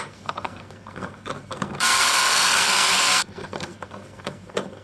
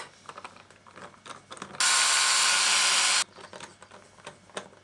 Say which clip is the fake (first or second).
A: first